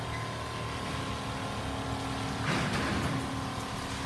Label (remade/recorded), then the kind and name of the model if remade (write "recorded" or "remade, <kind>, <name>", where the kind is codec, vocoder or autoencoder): recorded